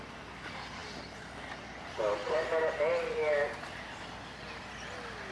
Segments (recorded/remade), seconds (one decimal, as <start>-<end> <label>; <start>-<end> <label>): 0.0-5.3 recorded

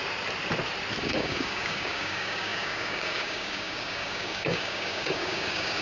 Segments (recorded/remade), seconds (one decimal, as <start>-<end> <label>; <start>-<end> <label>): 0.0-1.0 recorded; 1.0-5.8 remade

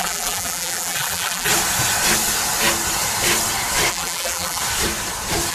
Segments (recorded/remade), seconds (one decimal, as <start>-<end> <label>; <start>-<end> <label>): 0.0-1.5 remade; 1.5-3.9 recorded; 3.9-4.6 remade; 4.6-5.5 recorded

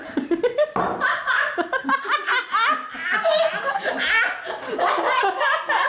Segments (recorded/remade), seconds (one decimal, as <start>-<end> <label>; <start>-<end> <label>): 0.0-5.9 recorded

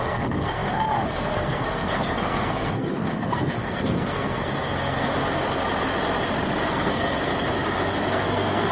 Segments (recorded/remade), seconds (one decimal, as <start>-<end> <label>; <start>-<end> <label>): 0.0-5.1 remade; 5.1-6.7 recorded; 6.7-7.3 remade; 7.3-8.1 recorded; 8.1-8.7 remade